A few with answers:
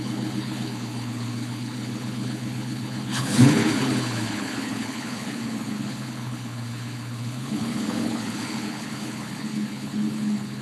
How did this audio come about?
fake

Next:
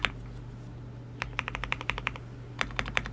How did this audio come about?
real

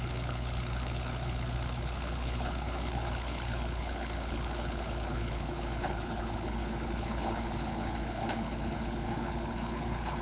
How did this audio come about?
fake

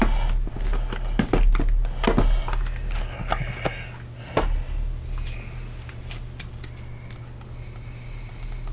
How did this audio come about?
real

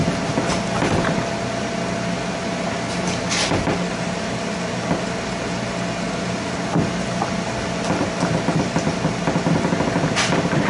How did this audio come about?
real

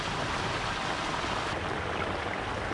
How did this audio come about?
real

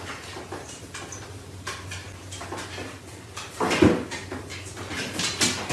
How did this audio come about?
real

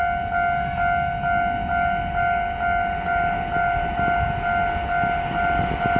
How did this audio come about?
real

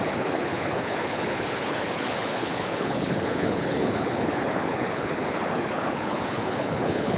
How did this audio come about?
fake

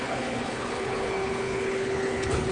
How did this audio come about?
fake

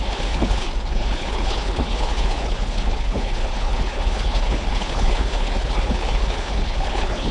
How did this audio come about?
fake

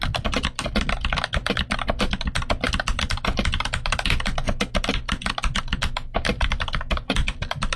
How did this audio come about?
real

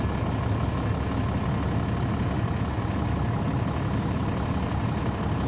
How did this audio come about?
real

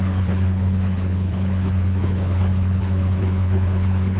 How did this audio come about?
fake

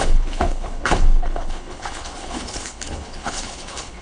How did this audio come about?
fake